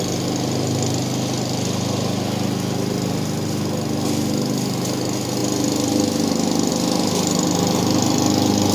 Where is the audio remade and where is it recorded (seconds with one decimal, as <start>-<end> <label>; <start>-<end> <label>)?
0.0-8.7 recorded